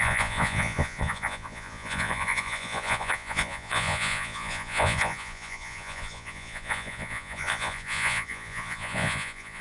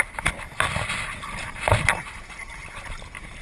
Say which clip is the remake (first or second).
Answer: first